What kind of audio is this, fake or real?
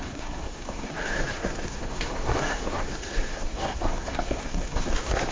fake